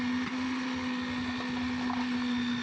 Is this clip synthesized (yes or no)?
no